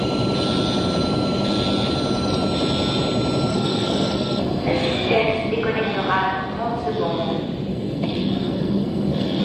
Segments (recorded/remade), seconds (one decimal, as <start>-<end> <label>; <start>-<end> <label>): 0.0-3.5 recorded; 3.5-5.5 remade; 5.5-7.7 recorded; 7.7-9.4 remade